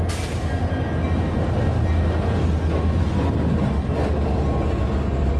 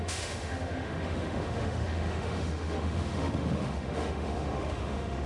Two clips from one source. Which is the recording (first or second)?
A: first